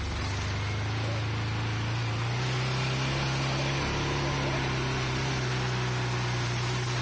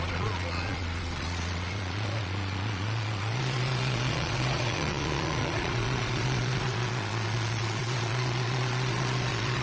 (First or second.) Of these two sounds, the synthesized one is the second